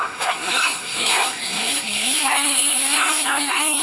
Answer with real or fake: fake